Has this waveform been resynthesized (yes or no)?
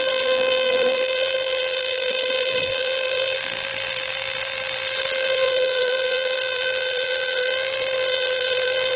yes